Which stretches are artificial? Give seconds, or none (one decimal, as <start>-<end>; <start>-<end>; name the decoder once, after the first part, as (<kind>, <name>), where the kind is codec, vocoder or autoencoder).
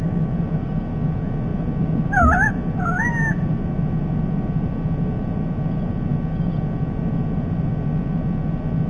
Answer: none